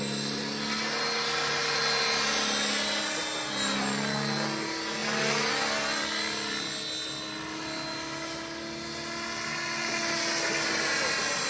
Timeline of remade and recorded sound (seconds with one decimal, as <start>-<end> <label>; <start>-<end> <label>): 0.0-11.5 recorded